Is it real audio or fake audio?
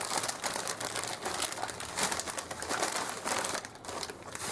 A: real